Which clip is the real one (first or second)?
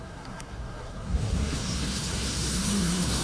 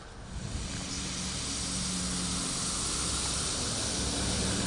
second